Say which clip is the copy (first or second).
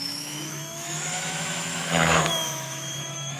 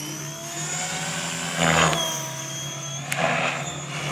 first